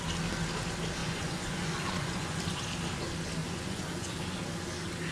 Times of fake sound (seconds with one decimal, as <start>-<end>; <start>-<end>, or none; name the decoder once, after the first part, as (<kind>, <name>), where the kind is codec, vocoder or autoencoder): 1.0-2.4 (vocoder, Vocos); 3.4-4.1